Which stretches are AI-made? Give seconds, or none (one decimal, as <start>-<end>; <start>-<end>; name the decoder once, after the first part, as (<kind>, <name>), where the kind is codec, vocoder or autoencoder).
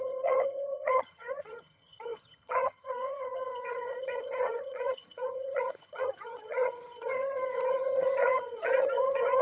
0.0-9.4 (vocoder, HiFi-GAN)